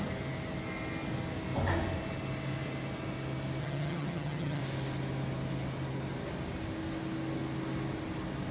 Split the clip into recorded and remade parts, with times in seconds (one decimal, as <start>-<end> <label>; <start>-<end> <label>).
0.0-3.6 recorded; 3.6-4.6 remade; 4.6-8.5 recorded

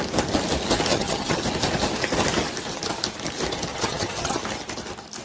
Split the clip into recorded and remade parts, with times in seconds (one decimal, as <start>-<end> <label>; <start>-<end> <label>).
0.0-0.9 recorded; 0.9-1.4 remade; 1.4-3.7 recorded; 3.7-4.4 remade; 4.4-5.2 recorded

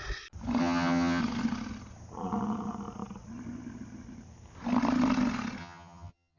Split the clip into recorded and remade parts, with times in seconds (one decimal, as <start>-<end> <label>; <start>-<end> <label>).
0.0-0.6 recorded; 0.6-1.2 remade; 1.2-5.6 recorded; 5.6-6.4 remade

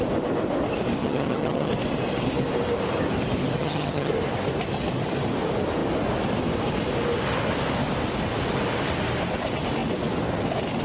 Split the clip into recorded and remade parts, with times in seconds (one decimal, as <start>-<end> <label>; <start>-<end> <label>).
0.0-1.0 recorded; 1.0-1.7 remade; 1.7-3.6 recorded; 3.6-4.1 remade; 4.1-10.8 recorded

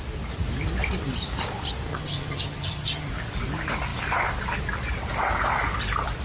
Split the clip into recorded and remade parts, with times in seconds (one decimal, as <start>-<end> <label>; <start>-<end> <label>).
0.0-1.9 recorded; 1.9-3.1 remade; 3.1-6.2 recorded